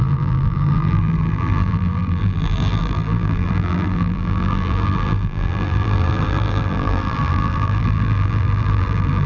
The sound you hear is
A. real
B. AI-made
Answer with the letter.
B